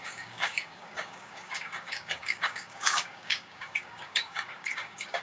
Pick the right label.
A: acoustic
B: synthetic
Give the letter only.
B